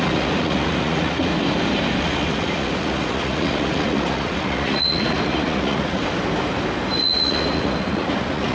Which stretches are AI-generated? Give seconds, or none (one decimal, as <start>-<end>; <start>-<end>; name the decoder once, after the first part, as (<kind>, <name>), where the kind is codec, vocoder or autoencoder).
0.0-1.3 (vocoder, Vocos); 2.0-6.0; 7.0-8.5